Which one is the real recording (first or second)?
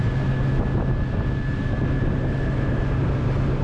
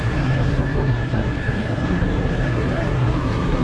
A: first